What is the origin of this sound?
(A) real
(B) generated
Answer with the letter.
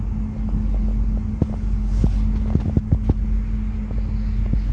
A